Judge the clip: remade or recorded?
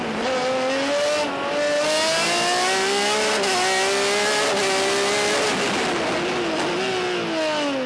recorded